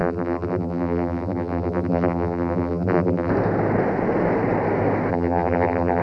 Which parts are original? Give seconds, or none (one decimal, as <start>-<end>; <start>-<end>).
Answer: 3.3-5.1